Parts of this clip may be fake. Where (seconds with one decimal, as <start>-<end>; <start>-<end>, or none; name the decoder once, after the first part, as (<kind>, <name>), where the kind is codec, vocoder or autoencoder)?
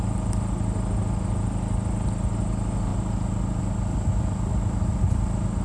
none